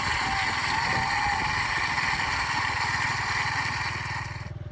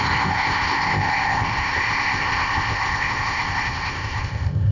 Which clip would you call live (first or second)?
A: first